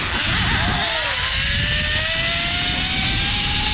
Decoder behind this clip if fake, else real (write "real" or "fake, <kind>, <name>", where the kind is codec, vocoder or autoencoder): real